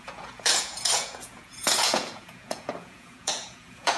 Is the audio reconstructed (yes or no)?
yes